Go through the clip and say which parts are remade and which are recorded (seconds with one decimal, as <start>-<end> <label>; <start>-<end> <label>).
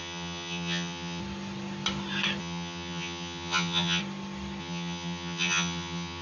0.0-1.2 remade; 1.2-2.4 recorded; 2.4-4.0 remade; 4.0-4.6 recorded; 4.6-6.2 remade